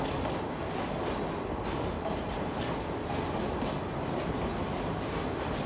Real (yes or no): yes